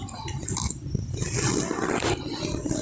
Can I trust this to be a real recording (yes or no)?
yes